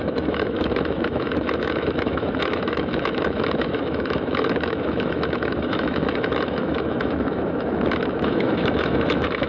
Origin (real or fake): fake